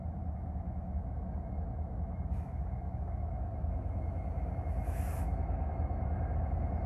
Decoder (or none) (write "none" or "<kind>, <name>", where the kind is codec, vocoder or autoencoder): autoencoder, DAC-VAE